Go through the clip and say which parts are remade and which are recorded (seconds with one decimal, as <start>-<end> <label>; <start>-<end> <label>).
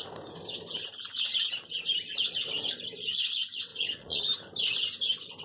0.0-3.7 recorded; 3.7-4.2 remade; 4.2-5.4 recorded